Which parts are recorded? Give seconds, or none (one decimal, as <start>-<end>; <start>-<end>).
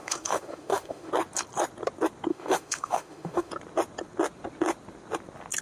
1.1-2.3; 3.5-5.6